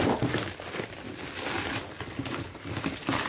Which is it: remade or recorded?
recorded